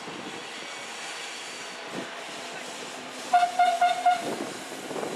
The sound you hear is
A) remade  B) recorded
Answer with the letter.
B